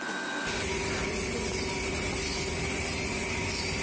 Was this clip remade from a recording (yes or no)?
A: no